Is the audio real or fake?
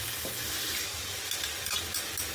real